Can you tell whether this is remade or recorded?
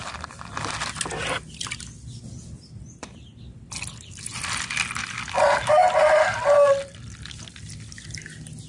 recorded